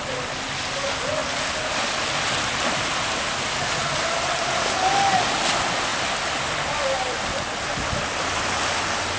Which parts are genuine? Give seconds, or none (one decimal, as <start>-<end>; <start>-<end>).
0.0-9.2